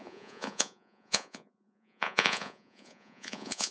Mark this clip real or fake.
fake